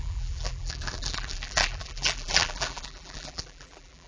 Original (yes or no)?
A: no